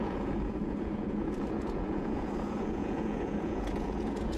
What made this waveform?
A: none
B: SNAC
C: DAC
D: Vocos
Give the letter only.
D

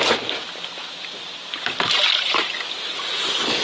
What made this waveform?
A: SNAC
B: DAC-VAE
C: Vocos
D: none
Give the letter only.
D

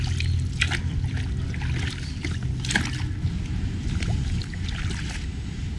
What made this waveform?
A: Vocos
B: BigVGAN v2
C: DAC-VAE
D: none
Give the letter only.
D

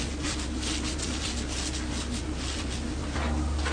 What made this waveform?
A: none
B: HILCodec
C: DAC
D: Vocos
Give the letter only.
A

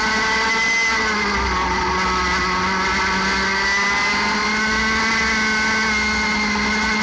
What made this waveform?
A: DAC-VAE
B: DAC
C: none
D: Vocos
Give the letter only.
C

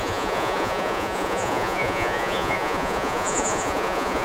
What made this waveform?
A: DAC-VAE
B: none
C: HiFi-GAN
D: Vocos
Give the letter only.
D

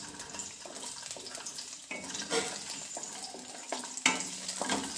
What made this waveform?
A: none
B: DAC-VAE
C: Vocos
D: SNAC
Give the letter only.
A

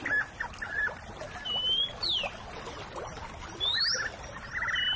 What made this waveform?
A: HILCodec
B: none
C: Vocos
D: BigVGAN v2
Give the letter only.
B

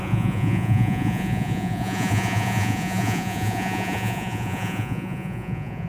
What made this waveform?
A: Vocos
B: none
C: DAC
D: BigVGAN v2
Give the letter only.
A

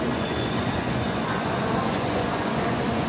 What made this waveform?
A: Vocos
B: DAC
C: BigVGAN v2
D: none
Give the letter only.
A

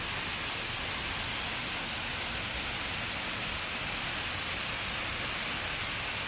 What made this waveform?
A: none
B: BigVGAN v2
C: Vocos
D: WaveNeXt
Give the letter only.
A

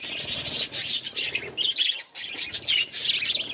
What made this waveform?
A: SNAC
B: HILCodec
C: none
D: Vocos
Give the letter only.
C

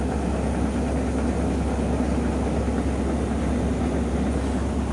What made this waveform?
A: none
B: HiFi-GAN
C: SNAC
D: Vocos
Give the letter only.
A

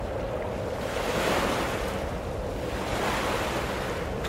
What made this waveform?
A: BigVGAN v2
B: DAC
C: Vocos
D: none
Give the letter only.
D